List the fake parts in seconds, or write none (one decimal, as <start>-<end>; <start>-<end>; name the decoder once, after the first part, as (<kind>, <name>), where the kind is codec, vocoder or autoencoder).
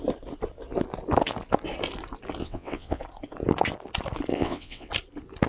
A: 2.4-3.0 (vocoder, WaveNeXt); 4.3-4.9